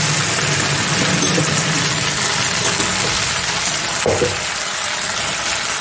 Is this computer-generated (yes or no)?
no